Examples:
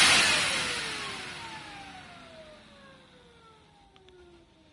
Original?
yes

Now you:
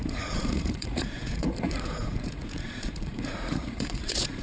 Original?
no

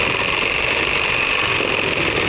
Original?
yes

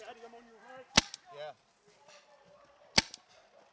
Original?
yes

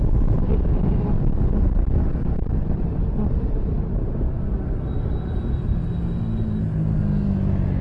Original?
yes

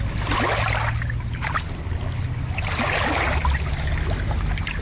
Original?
yes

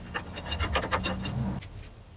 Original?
yes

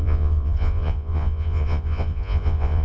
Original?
no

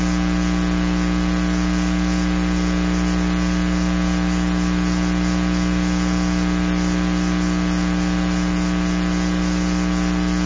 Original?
yes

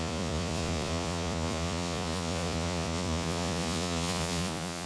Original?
no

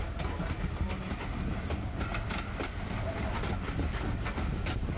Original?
yes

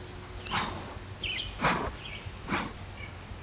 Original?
yes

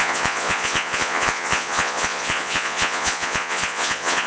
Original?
no